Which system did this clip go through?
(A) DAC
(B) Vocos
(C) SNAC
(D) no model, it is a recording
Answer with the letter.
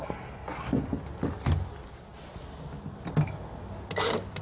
D